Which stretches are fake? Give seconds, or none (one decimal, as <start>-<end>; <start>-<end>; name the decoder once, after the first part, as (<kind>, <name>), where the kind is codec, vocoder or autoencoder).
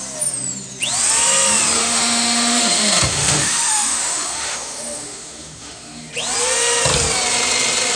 1.8-6.1 (autoencoder, DAC-VAE)